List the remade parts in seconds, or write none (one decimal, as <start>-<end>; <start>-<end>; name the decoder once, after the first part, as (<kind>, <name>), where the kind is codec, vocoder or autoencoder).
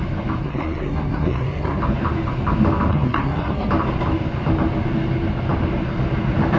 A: 0.4-1.8 (codec, SNAC); 2.9-3.7